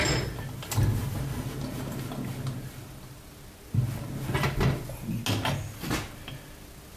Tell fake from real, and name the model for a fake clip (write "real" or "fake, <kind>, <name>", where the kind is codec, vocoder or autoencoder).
real